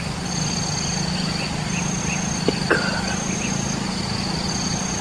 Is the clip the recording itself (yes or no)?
yes